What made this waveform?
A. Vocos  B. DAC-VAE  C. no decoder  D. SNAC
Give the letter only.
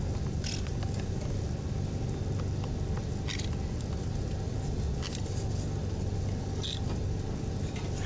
C